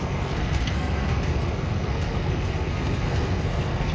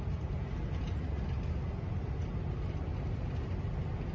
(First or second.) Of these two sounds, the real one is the second